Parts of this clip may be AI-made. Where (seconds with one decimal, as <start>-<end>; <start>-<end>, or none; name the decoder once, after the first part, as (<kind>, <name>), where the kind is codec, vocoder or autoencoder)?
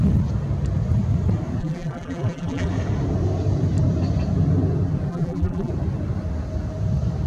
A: 1.6-2.7 (vocoder, BigVGAN v2); 5.1-5.7